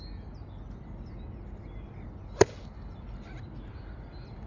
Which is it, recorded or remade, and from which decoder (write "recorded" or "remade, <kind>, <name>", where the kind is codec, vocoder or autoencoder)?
recorded